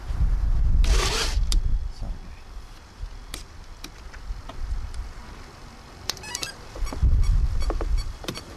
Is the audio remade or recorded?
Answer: remade